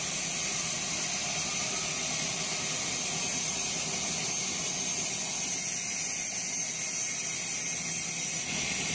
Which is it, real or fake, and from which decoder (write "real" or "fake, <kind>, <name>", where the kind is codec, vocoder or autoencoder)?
real